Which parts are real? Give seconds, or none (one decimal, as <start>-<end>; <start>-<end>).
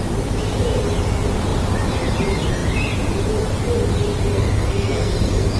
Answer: 0.0-4.3